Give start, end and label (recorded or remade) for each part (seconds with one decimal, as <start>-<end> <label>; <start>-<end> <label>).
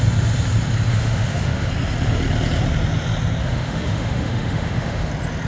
0.0-0.9 recorded; 0.9-1.7 remade; 1.7-3.4 recorded; 3.4-5.1 remade; 5.1-5.5 recorded